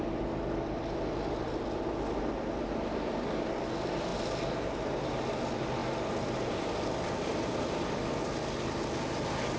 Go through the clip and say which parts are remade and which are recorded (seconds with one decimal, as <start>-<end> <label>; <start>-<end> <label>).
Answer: 0.0-9.6 recorded